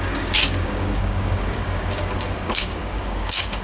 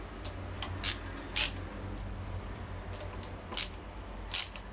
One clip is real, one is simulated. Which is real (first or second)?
second